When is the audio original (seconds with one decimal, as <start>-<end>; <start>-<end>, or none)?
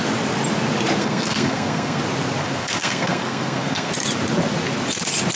0.0-1.0; 2.0-2.4; 3.9-5.4